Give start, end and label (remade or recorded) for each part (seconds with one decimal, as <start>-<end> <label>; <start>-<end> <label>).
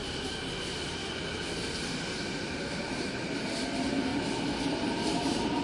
0.0-2.3 recorded; 2.3-4.1 remade; 4.1-4.8 recorded; 4.8-5.6 remade